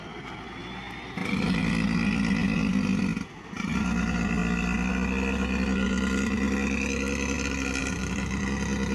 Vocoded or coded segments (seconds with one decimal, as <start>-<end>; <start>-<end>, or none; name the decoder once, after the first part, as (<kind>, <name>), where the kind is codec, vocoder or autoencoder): 1.2-1.7 (vocoder, BigVGAN v2); 7.8-8.4